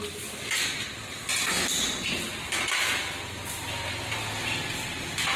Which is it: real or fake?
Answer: real